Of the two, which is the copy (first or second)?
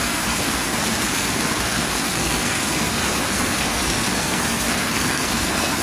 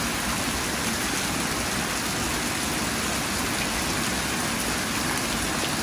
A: first